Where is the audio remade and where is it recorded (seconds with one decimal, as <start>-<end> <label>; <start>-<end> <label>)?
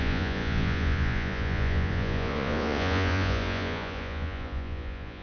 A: 0.0-5.2 remade